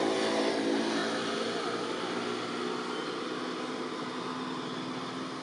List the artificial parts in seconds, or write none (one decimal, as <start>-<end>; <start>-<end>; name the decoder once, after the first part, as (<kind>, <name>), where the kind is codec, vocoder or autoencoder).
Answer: none